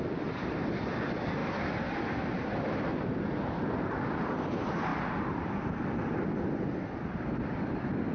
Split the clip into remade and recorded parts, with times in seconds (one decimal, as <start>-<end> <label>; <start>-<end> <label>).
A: 0.0-4.9 recorded; 4.9-7.6 remade; 7.6-8.1 recorded